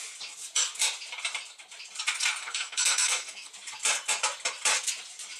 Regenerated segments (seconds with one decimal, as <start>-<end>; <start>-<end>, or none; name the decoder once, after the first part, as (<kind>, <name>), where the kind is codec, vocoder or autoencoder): 2.4-3.5 (codec, SNAC)